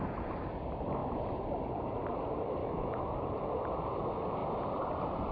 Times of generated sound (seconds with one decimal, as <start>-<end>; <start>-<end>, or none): 2.6-3.1